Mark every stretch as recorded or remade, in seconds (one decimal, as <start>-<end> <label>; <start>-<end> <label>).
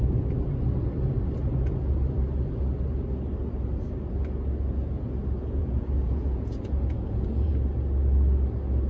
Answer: 0.0-5.6 recorded; 5.6-7.5 remade; 7.5-8.9 recorded